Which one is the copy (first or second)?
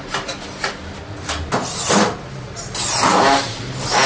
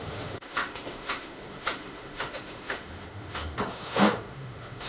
second